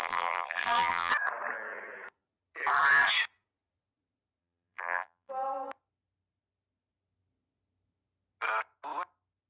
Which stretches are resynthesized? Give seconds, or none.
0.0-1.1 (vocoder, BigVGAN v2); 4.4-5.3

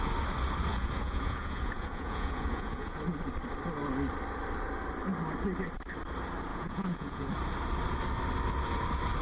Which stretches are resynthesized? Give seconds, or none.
0.7-3.0 (vocoder, Vocos); 6.5-7.3

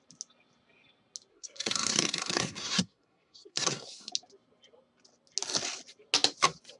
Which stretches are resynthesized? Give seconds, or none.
1.3-4.1 (codec, SNAC)

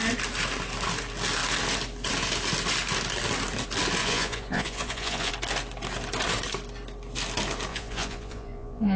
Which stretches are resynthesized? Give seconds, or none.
4.0-5.3 (vocoder, Vocos); 7.7-9.0

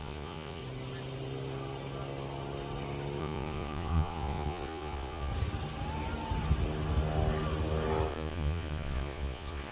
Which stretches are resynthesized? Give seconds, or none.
0.0-0.6 (vocoder, Vocos); 3.2-5.3; 8.1-9.7

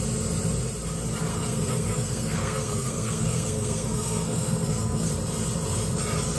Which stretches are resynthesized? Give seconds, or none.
1.3-5.1 (codec, SNAC)

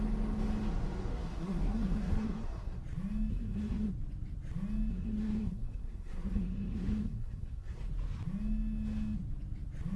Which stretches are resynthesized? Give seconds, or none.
1.1-2.8 (codec, SNAC); 3.3-3.9; 4.9-7.9

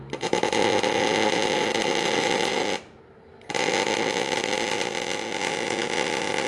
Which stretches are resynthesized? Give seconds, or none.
none